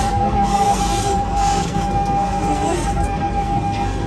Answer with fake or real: fake